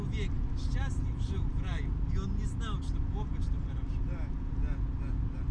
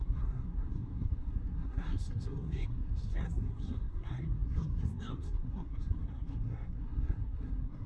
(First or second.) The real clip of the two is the first